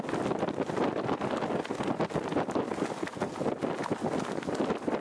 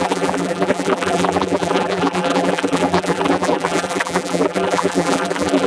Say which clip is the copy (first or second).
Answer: second